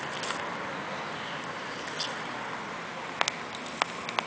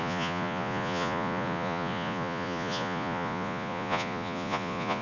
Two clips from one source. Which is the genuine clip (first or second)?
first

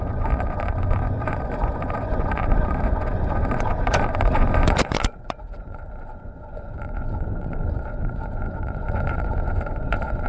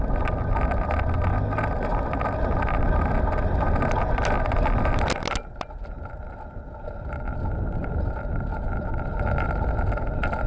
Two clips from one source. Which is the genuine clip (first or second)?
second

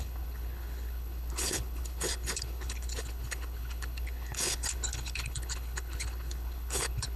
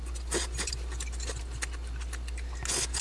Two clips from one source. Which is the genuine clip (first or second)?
second